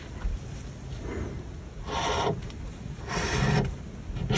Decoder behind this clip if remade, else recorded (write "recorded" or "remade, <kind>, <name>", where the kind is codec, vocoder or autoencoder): recorded